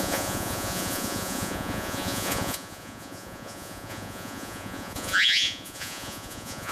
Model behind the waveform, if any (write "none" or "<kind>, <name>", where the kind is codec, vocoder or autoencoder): vocoder, Vocos